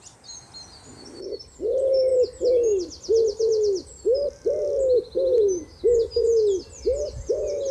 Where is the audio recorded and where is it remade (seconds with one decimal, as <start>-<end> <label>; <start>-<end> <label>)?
0.0-7.7 recorded